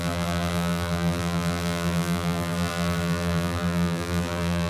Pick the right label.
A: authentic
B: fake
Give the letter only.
B